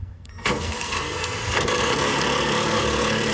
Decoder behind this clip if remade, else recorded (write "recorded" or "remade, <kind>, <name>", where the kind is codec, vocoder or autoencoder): remade, codec, SNAC